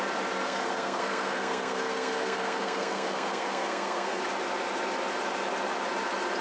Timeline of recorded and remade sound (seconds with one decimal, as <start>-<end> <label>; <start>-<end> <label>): 0.0-0.4 recorded; 0.4-4.2 remade; 4.2-6.4 recorded